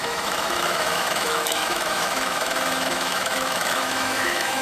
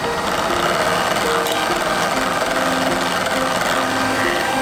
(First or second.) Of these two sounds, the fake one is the first